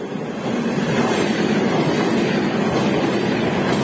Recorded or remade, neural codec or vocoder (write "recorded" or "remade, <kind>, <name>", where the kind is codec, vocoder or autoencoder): recorded